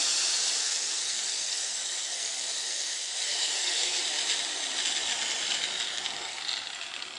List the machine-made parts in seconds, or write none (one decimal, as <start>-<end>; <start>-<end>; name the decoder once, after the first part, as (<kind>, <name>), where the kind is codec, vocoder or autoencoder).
0.6-4.0 (codec, SNAC); 5.9-6.4